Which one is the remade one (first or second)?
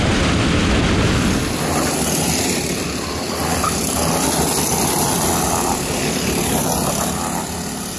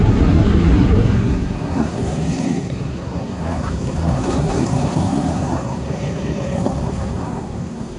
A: second